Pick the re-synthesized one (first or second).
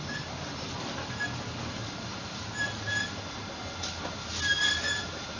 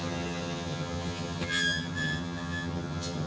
second